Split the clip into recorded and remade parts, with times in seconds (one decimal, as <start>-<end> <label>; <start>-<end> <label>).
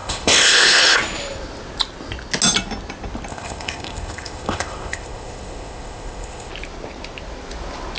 0.0-0.8 remade; 0.8-3.3 recorded; 3.3-6.5 remade; 6.5-8.0 recorded